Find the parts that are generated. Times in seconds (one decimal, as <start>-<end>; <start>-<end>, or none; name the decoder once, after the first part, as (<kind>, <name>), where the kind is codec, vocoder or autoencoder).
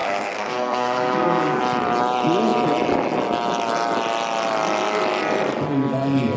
0.0-1.6 (codec, SNAC)